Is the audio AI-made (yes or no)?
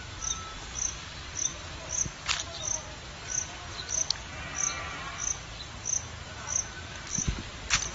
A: no